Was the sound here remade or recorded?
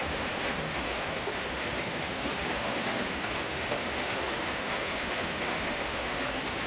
remade